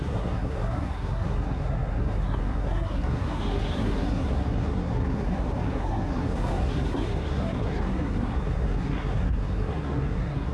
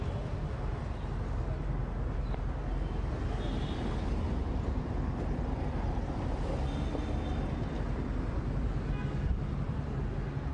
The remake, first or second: first